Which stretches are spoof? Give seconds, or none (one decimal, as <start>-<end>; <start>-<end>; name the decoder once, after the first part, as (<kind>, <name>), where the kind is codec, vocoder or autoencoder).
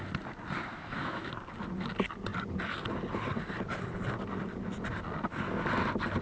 0.7-1.3 (autoencoder, DAC-VAE)